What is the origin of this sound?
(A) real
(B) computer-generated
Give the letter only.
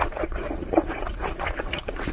B